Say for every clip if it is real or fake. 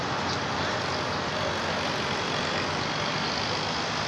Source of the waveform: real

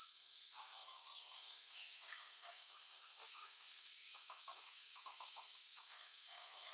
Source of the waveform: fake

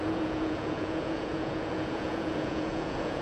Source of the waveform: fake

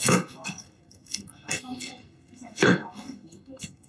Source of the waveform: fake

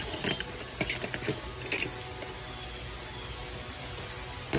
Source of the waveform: real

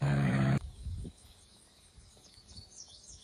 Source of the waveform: fake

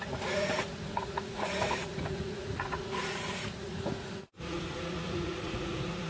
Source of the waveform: fake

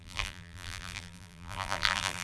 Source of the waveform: fake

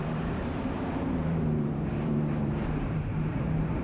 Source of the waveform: fake